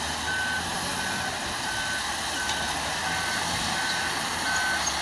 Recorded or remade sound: recorded